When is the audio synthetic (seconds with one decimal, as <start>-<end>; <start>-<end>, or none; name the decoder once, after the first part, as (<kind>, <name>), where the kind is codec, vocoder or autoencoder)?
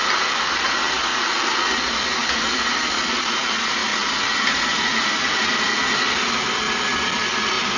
none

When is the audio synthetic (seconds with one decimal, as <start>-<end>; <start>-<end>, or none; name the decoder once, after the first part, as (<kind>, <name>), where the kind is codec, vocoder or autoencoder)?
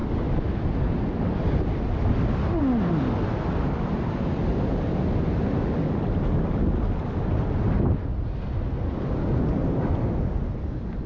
none